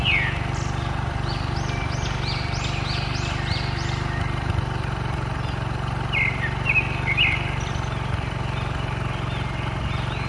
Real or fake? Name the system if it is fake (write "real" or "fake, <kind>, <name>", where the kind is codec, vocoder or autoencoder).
real